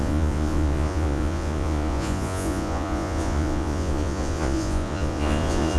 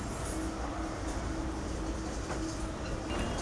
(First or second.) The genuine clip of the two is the second